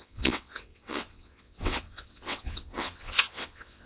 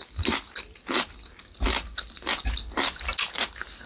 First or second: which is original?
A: second